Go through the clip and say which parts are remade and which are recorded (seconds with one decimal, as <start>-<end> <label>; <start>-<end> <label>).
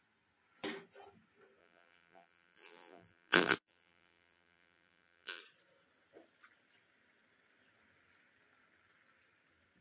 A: 0.0-1.6 recorded; 1.6-5.4 remade; 5.4-9.8 recorded